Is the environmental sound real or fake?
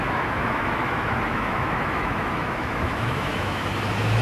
fake